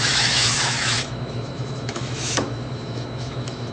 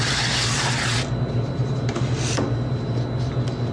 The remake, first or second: first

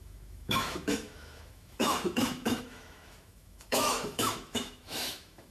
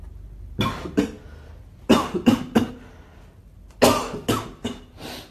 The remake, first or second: first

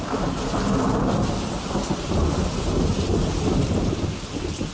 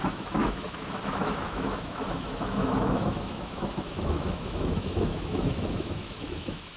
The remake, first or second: second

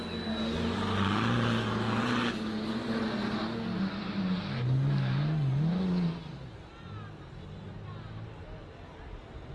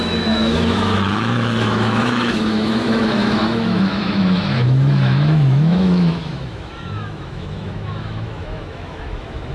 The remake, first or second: second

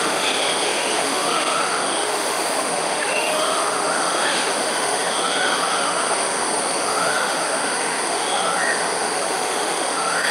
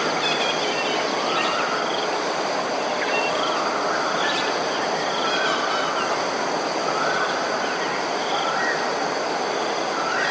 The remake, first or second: first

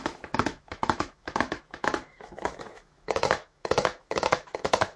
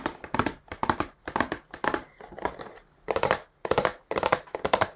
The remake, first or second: first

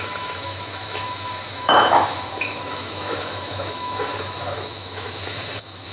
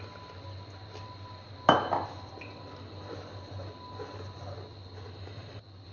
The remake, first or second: first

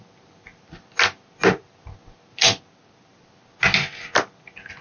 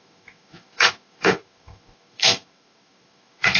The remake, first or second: second